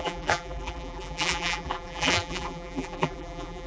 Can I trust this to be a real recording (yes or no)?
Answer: no